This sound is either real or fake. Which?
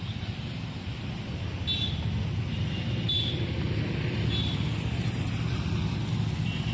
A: real